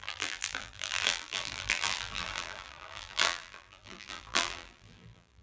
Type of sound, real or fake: fake